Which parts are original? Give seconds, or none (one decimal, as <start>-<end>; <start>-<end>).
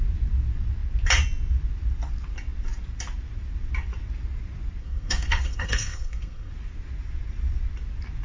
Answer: 0.0-4.8; 6.5-8.2